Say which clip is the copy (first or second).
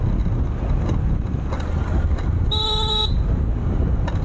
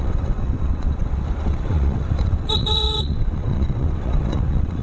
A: second